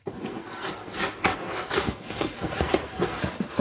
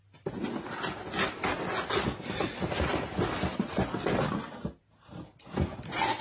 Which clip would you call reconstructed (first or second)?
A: first